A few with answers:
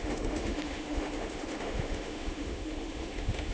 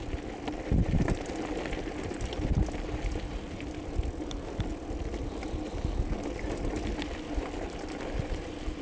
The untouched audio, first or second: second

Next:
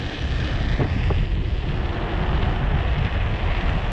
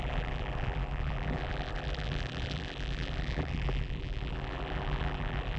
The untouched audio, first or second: first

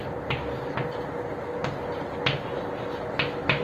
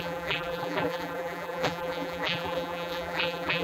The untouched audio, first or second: first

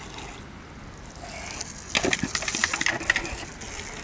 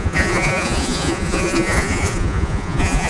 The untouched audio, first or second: first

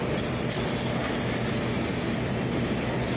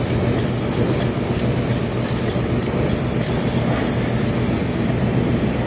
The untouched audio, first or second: first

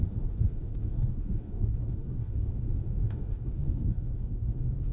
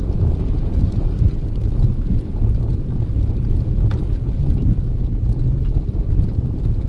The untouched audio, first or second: second